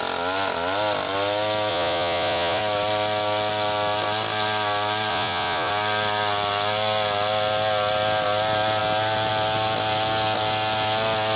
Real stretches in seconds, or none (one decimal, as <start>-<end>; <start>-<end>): 0.0-1.7; 2.6-5.1; 5.7-11.4

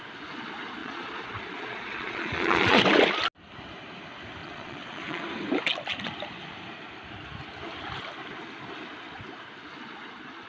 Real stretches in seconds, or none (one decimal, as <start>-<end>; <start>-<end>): 0.0-0.8; 2.8-4.4; 5.2-10.5

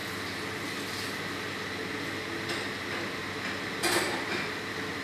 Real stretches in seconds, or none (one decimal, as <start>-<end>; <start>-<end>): 0.0-5.0

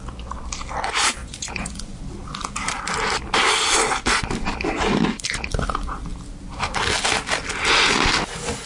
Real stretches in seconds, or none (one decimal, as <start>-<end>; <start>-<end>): 0.0-1.2; 2.0-8.7

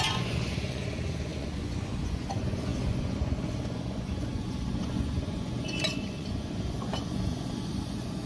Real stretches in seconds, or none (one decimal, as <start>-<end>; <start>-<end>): none

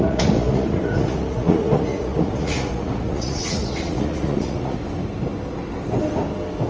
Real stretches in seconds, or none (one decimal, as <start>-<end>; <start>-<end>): 4.8-6.7